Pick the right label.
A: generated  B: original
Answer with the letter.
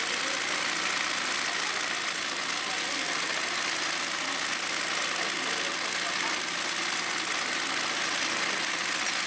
B